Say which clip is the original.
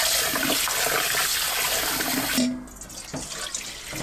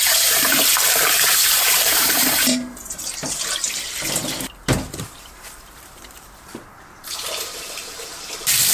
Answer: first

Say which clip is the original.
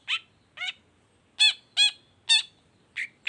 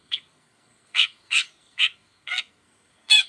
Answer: first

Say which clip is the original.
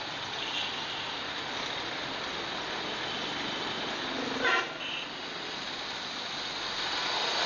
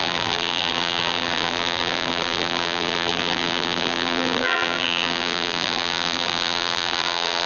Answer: first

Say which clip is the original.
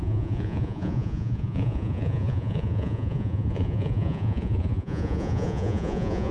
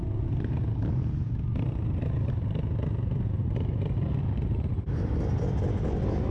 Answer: second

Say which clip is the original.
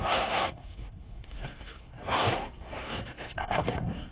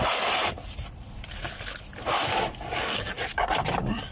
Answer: second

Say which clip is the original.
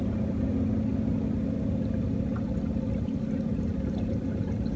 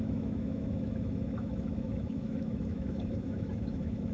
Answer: first